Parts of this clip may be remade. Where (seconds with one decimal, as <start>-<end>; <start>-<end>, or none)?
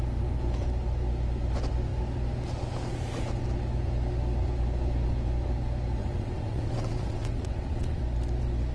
6.0-8.0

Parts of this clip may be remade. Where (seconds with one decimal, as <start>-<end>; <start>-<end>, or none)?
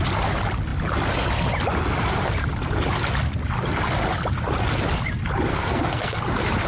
5.5-6.2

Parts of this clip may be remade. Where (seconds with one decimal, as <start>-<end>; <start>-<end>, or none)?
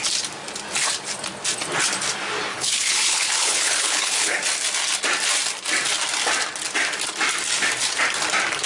2.5-4.4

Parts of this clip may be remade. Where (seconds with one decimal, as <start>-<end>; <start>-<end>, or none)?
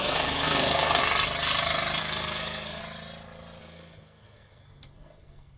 0.0-1.0; 2.0-2.8; 3.6-5.6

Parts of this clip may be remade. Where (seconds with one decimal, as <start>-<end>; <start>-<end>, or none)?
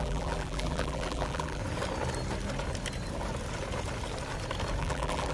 0.0-1.6; 4.8-5.3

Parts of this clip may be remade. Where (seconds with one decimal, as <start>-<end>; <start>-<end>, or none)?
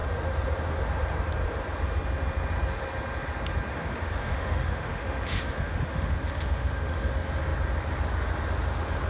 3.7-7.1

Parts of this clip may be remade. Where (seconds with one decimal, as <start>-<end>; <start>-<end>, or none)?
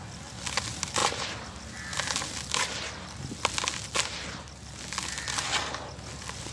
none